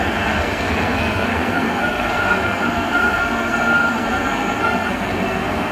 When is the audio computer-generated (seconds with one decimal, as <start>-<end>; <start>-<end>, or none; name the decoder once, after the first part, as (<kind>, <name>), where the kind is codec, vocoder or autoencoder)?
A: 0.0-5.7 (codec, SNAC)